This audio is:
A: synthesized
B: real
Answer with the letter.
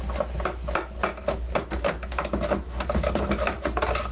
B